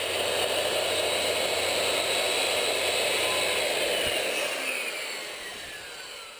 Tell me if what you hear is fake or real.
real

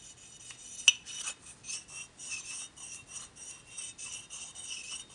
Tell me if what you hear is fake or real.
real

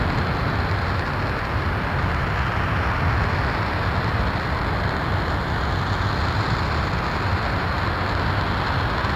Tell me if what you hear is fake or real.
real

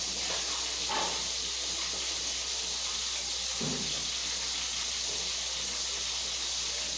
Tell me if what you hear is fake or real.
real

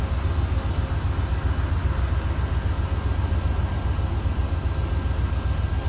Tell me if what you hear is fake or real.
real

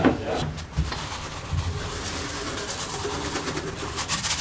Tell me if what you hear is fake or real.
real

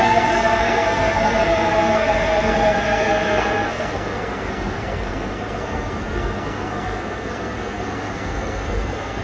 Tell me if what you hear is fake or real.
fake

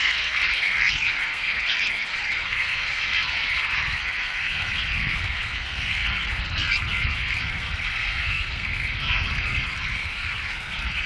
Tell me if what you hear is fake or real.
fake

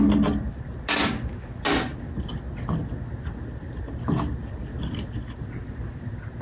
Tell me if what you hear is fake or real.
real